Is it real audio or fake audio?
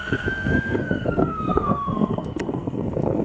fake